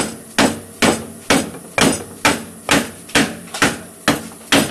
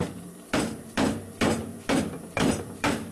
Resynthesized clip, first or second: second